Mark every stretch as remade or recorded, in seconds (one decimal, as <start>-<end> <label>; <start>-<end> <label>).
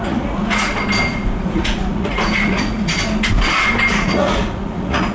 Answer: 0.0-0.7 remade; 0.7-1.4 recorded; 1.4-2.9 remade; 2.9-3.9 recorded; 3.9-5.1 remade